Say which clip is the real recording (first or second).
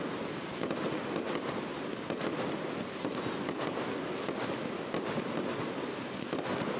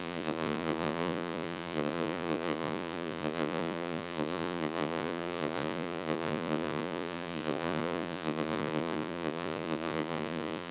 first